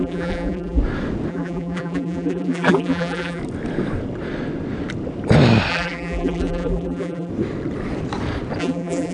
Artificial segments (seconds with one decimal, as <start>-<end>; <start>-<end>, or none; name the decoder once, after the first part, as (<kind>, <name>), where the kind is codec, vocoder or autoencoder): 0.0-0.8 (vocoder, BigVGAN v2); 1.3-3.4; 5.7-7.3; 8.6-9.1

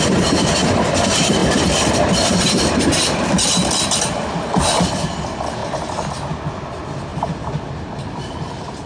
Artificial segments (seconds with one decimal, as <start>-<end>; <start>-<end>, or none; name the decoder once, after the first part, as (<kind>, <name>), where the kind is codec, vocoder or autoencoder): 0.0-1.4 (vocoder, BigVGAN v2); 4.9-5.6; 6.6-7.1; 8.3-8.9

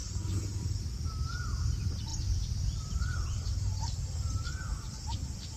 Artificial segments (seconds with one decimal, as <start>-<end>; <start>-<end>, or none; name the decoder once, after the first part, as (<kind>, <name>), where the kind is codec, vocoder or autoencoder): 1.3-5.6 (vocoder, BigVGAN v2)